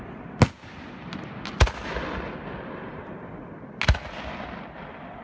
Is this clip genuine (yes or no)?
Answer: yes